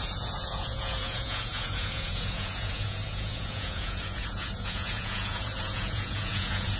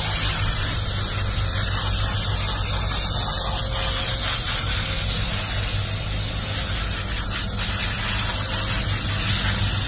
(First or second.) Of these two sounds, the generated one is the first